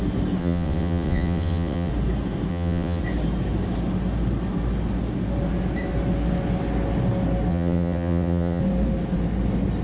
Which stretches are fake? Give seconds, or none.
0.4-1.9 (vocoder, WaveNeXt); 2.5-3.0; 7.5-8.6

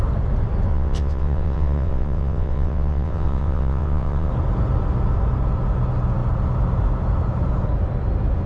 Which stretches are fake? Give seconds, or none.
0.7-4.3 (vocoder, WaveNeXt)

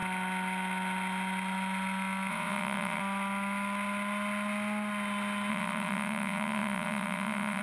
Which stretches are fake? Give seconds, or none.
2.3-3.0 (vocoder, WaveNeXt); 5.5-7.6

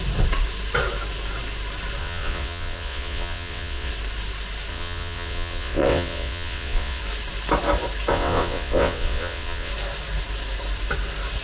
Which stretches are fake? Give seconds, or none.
2.0-3.9 (vocoder, WaveNeXt); 4.7-7.0; 8.1-9.7